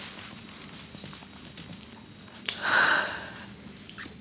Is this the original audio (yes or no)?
yes